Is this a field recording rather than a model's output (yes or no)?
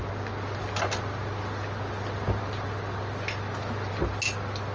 yes